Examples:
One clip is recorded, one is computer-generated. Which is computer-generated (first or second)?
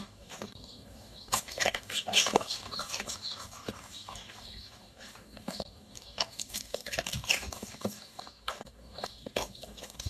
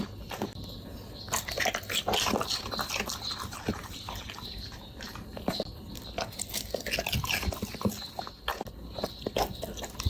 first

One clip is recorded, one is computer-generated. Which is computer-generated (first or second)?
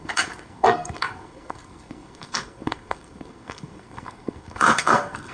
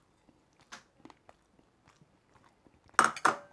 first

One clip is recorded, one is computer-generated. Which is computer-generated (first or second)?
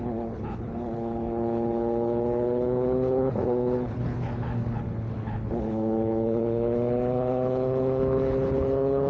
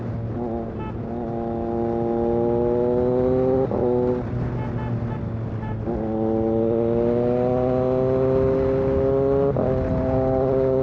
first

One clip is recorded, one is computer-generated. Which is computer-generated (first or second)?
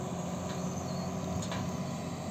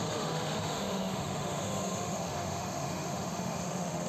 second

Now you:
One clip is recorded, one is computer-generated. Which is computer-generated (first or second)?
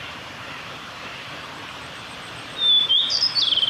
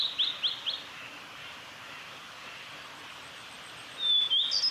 first